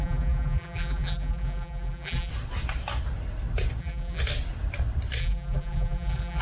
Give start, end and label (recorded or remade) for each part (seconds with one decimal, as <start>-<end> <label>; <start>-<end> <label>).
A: 0.0-2.3 remade; 2.3-3.8 recorded; 3.8-4.2 remade; 4.2-5.2 recorded; 5.2-6.4 remade